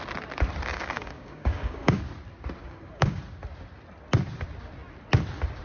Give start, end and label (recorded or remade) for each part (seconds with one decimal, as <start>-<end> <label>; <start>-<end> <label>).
0.0-0.7 recorded; 0.7-2.0 remade; 2.0-2.6 recorded; 2.6-3.2 remade; 3.2-5.6 recorded

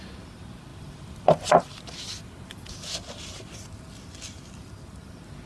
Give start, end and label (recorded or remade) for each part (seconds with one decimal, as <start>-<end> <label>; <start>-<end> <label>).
0.0-5.5 recorded

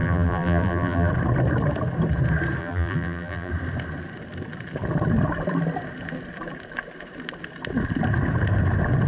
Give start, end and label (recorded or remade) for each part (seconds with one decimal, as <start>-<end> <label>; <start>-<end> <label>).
0.0-1.1 remade; 1.1-2.6 recorded; 2.6-3.5 remade; 3.5-9.1 recorded

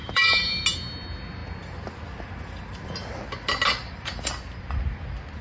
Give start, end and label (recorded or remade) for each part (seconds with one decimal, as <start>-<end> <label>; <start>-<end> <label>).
0.0-0.6 remade; 0.6-5.4 recorded